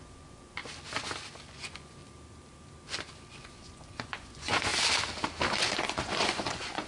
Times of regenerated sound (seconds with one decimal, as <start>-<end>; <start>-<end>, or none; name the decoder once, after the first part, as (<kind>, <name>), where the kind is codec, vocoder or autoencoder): 0.0-0.6 (vocoder, Vocos); 1.5-2.0; 3.3-4.7; 5.5-6.9